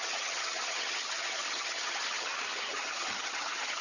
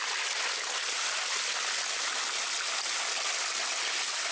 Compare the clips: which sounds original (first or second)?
second